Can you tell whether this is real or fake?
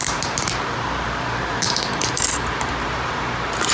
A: fake